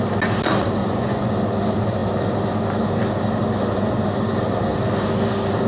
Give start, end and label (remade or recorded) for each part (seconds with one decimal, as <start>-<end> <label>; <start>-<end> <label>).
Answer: 0.0-0.8 recorded; 0.8-1.3 remade; 1.3-5.7 recorded

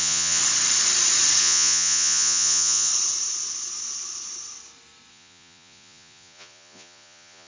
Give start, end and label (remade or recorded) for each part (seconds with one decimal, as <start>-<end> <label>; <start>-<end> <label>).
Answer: 0.0-0.4 remade; 0.4-1.4 recorded; 1.4-2.9 remade; 2.9-5.1 recorded; 5.1-7.5 remade

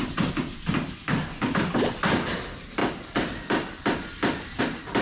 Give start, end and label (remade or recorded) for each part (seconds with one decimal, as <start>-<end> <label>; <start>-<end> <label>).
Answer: 0.0-5.0 recorded

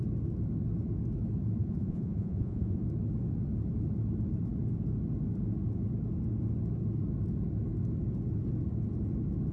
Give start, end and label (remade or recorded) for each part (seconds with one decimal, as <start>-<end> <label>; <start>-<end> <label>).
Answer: 0.0-1.6 recorded; 1.6-2.8 remade; 2.8-9.5 recorded

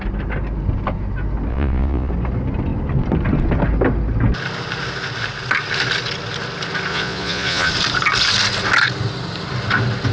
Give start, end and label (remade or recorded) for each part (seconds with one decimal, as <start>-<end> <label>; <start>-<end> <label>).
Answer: 0.0-1.5 recorded; 1.5-2.1 remade; 2.1-6.9 recorded; 6.9-7.7 remade; 7.7-10.1 recorded

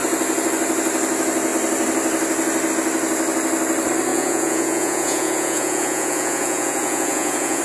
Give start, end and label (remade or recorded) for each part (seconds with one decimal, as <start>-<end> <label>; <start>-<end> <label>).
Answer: 0.0-4.1 recorded; 4.1-7.6 remade